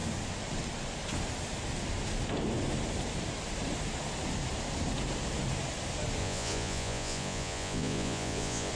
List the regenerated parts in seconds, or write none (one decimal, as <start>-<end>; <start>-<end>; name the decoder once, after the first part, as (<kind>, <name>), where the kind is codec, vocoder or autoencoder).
6.2-8.7 (vocoder, Vocos)